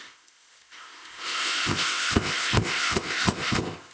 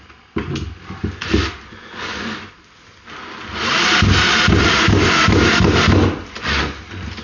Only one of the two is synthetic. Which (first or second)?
first